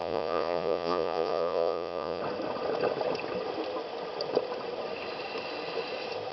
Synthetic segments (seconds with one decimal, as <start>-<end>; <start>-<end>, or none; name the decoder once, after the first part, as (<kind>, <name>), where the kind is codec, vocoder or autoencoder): 0.0-2.2 (vocoder, Vocos)